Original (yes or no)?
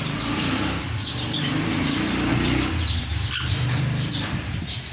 no